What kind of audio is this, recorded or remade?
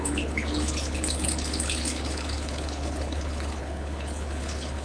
remade